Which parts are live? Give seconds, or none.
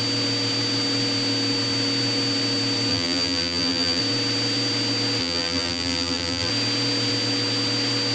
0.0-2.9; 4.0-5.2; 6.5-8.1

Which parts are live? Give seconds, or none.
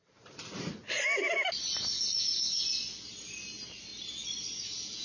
0.8-3.1; 3.9-5.0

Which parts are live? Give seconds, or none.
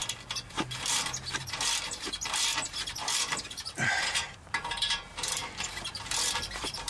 0.0-0.9; 5.4-6.0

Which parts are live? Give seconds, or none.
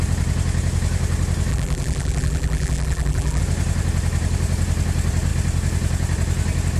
0.0-1.5; 3.4-6.8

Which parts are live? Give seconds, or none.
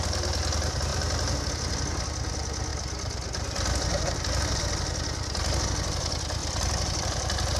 0.0-0.9; 1.5-6.4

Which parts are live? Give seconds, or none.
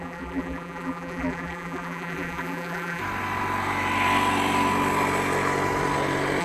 3.0-6.4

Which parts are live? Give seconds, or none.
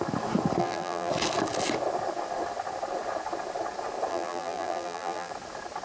0.0-0.6; 1.1-4.1; 5.3-5.8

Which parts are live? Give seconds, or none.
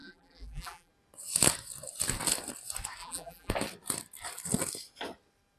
0.9-3.0; 3.5-5.6